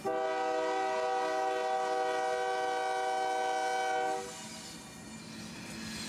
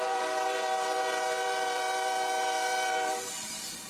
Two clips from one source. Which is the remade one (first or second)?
second